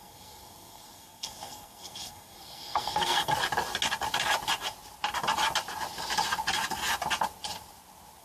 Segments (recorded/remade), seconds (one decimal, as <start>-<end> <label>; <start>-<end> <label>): 0.0-3.3 remade; 3.3-8.2 recorded